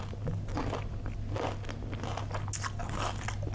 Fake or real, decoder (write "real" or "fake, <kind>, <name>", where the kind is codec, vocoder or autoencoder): real